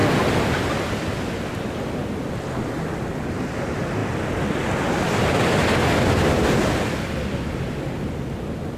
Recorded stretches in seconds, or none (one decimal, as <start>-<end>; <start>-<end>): 0.0-8.8